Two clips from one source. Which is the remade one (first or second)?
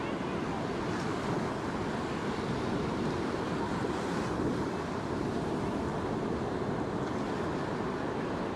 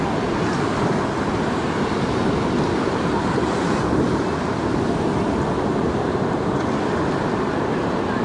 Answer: second